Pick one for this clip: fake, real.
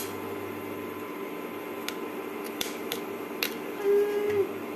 real